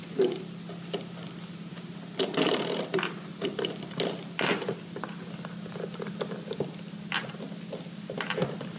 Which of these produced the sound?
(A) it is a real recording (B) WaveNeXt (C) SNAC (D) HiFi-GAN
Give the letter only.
A